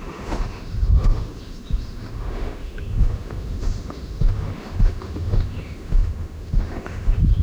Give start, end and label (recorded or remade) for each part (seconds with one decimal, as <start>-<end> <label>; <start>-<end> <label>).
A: 0.0-7.4 remade